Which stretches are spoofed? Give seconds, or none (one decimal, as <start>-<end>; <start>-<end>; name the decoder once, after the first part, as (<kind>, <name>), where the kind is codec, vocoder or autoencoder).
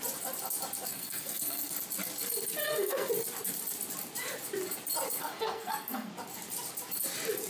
0.9-1.7 (codec, SNAC); 2.6-3.1; 5.2-6.1